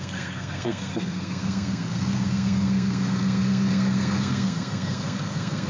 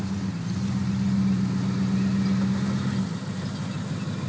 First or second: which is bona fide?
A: second